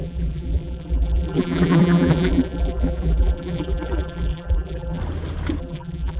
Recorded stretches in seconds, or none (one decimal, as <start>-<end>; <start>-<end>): 5.0-5.6